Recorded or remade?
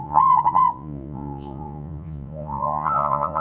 remade